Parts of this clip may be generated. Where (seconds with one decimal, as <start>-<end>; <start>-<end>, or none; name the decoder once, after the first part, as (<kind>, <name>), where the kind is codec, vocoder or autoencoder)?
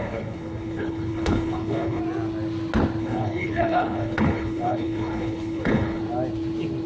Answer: 0.0-2.0 (codec, HILCodec); 3.0-6.0